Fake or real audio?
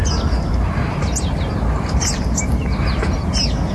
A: real